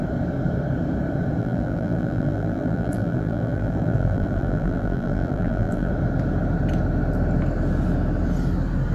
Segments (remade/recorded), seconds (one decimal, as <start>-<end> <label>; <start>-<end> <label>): 0.0-1.4 recorded; 1.4-5.9 remade; 5.9-8.9 recorded